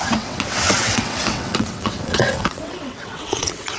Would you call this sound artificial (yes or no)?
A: yes